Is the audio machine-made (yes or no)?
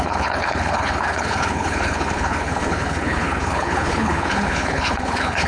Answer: yes